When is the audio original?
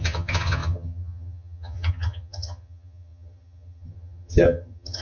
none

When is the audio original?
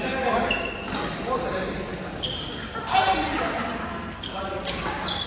0.0-3.9; 4.4-5.3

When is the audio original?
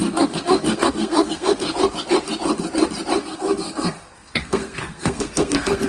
1.7-3.2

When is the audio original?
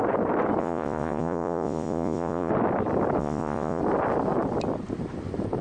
0.0-0.6; 2.5-3.2; 3.8-5.6